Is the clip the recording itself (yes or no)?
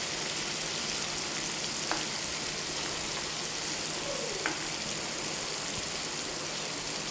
yes